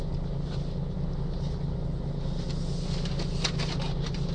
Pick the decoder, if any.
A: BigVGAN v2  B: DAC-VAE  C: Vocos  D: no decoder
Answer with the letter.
D